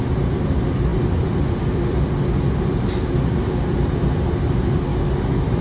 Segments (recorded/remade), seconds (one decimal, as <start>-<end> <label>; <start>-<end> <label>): 0.0-4.9 recorded; 4.9-5.6 remade